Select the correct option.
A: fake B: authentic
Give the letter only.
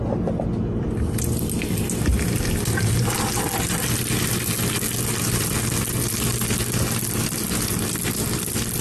B